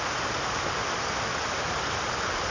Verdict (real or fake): real